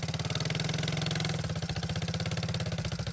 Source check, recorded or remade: recorded